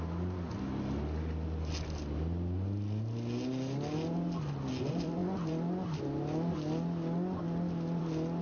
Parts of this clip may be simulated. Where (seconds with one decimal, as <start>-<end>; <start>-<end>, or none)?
none